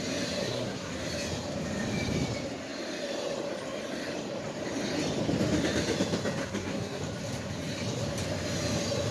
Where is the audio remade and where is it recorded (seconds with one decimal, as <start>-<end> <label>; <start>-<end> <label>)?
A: 0.0-0.4 recorded; 0.4-0.9 remade; 0.9-6.4 recorded; 6.4-7.0 remade; 7.0-9.1 recorded